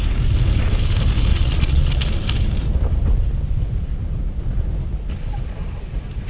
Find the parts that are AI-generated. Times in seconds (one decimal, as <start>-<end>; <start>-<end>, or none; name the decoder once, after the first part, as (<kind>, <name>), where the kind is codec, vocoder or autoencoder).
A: 1.3-2.1 (vocoder, Vocos)

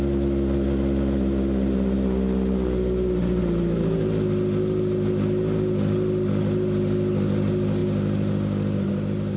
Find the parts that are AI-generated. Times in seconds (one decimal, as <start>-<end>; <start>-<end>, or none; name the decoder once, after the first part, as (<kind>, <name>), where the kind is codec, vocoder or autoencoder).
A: none

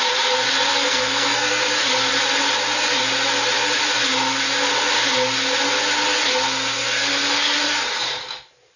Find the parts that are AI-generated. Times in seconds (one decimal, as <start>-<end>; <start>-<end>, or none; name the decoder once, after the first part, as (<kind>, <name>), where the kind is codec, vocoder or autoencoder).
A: 0.7-1.6 (codec, SNAC)

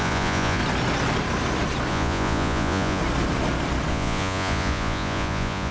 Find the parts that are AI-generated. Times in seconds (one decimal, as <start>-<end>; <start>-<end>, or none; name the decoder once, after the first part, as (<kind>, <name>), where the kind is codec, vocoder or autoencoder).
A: 0.0-0.6 (vocoder, Vocos); 1.9-3.0; 3.9-5.7

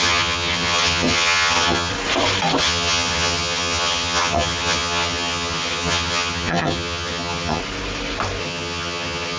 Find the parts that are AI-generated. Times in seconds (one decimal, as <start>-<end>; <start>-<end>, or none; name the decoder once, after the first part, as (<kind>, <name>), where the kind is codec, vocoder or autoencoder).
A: 0.0-1.9 (vocoder, HiFi-GAN); 2.6-7.6; 8.4-9.4

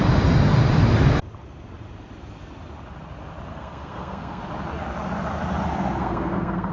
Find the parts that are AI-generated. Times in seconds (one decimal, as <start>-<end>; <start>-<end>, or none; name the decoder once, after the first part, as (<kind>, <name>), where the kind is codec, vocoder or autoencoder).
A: 3.5-4.4 (codec, SNAC); 6.0-6.7

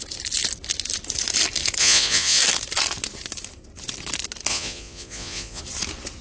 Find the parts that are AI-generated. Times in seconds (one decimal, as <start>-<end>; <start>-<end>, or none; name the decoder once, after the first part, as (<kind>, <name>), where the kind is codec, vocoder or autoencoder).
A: 1.8-2.4 (vocoder, Vocos); 4.5-5.6

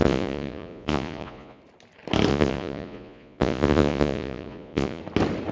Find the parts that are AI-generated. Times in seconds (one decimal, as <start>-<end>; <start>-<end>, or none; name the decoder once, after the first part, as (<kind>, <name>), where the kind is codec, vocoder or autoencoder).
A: 0.0-1.6 (vocoder, Vocos); 2.3-5.0